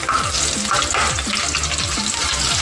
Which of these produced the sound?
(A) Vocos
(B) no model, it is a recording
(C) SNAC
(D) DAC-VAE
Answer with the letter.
B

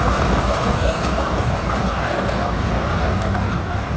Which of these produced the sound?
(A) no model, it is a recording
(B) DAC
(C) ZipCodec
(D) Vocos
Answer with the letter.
B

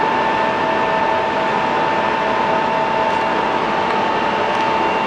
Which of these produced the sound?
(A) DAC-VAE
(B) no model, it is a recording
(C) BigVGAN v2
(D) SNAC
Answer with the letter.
B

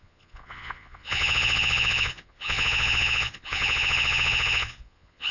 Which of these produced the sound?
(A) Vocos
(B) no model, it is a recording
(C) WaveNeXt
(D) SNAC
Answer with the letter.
A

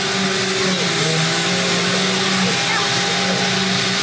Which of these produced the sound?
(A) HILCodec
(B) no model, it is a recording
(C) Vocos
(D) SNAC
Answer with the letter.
B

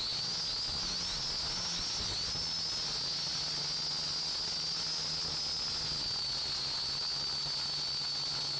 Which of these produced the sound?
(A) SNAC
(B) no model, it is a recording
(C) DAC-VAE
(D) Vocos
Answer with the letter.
B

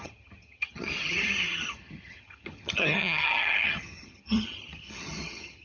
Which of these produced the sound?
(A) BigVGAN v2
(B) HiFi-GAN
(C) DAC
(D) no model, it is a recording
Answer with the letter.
B